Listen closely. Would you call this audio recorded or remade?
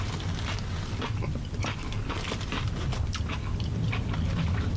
recorded